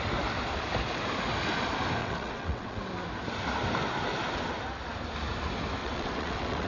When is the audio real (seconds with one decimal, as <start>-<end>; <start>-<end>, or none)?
0.0-2.0; 2.8-5.8